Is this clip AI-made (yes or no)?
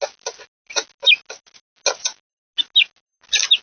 no